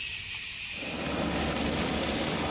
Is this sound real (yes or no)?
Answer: yes